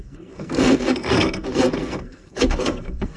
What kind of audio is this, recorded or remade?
remade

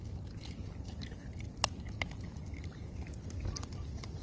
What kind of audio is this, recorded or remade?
recorded